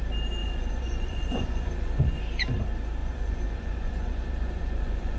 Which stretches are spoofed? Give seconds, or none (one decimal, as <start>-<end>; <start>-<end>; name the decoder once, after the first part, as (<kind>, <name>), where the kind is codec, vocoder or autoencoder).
0.4-2.2 (vocoder, Vocos); 3.0-5.2